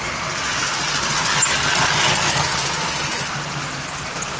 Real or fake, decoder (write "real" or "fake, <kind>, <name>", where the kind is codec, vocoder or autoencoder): real